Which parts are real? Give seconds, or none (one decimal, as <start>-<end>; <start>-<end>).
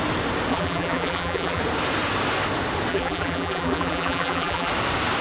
0.0-0.5; 1.6-2.9; 4.7-5.2